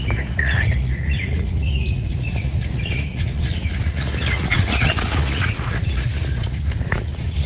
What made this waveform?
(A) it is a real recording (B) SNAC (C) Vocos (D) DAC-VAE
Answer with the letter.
C